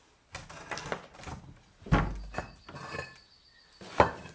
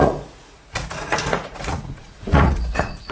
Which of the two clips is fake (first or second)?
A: second